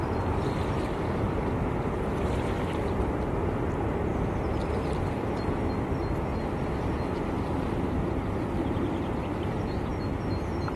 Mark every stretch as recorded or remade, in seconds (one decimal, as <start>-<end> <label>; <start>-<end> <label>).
0.0-4.1 remade; 4.1-6.6 recorded; 6.6-9.9 remade; 9.9-10.8 recorded

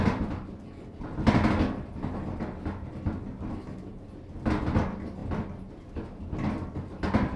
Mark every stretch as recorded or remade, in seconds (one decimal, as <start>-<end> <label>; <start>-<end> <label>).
0.0-7.4 recorded

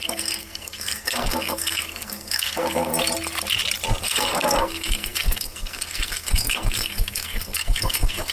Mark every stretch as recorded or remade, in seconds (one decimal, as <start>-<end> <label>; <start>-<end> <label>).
0.0-2.9 remade; 2.9-4.0 recorded; 4.0-8.3 remade

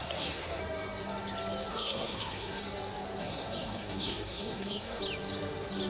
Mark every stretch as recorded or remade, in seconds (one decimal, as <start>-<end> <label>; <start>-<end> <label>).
0.0-0.6 remade; 0.6-1.7 recorded; 1.7-2.6 remade; 2.6-3.2 recorded; 3.2-5.0 remade; 5.0-5.9 recorded

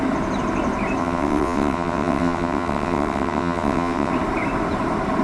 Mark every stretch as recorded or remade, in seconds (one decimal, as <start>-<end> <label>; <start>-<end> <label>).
0.0-1.0 recorded; 1.0-4.1 remade; 4.1-5.2 recorded

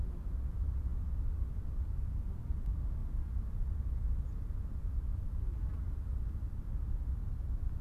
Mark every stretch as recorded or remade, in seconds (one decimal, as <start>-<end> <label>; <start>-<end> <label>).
0.0-0.9 recorded; 0.9-2.4 remade; 2.4-5.1 recorded; 5.1-6.0 remade; 6.0-7.8 recorded